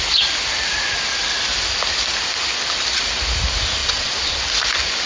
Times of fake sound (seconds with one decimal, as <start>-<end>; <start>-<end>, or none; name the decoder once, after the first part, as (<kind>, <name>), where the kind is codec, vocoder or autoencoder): 3.8-4.4 (vocoder, Vocos)